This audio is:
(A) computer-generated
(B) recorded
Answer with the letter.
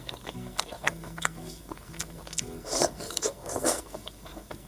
A